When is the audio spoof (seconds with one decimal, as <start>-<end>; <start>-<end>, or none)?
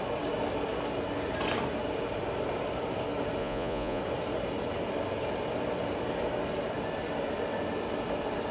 3.4-4.0